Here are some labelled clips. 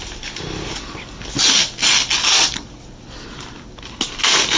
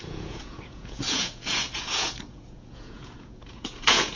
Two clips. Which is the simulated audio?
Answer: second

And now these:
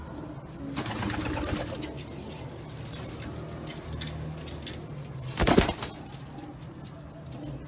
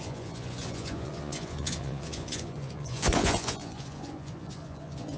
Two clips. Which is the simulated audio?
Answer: second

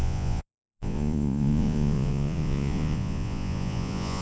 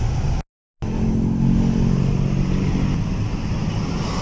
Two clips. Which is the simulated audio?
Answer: first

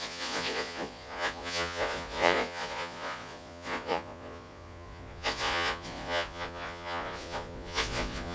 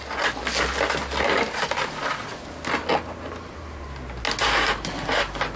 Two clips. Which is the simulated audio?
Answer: first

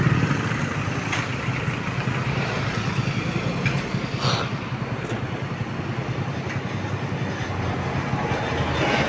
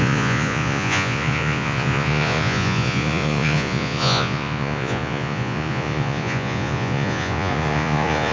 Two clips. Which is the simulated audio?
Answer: second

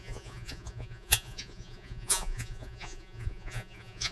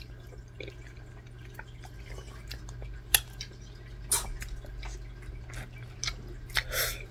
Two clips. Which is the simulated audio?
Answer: first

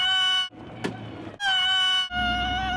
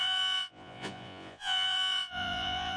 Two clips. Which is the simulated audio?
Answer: second